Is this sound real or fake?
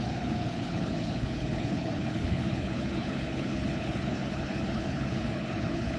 fake